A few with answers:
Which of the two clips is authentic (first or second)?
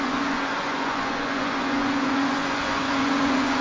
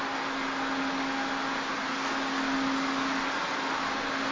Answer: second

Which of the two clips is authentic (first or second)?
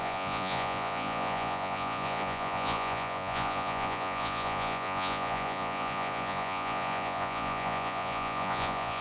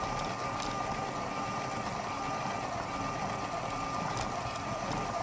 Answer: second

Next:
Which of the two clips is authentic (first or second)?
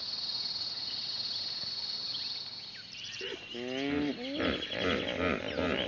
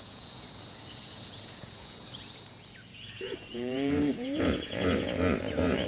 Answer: first